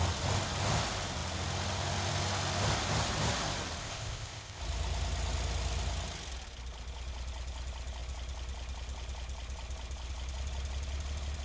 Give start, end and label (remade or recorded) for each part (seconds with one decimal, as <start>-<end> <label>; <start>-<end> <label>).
0.0-3.8 recorded; 3.8-4.6 remade; 4.6-11.4 recorded

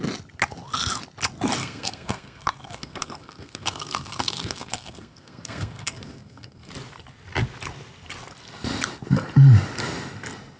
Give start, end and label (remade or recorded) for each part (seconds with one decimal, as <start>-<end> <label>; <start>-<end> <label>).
0.0-1.6 recorded; 1.6-6.7 remade; 6.7-10.6 recorded

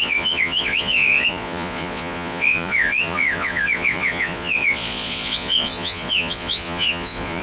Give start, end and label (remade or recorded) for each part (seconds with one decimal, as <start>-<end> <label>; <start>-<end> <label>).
0.0-7.4 remade

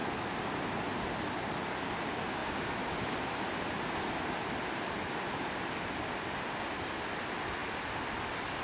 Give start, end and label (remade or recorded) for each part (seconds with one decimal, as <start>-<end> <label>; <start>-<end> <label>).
0.0-8.6 recorded